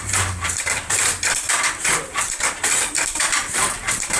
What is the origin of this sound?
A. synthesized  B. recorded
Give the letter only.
A